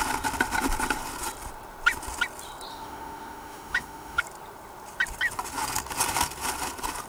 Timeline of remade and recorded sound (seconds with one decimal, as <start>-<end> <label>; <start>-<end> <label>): 0.0-2.7 recorded; 2.7-4.2 remade; 4.2-7.1 recorded